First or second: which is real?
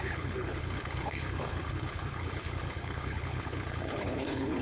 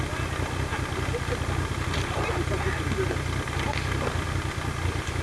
second